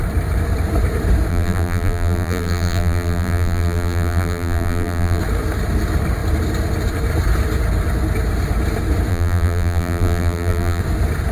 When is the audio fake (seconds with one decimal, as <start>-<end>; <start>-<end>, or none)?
1.3-5.2; 9.1-10.8